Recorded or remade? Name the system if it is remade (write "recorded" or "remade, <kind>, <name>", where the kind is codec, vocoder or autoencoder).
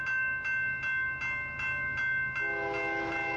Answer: recorded